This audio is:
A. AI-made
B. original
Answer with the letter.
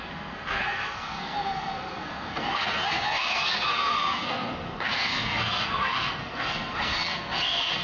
A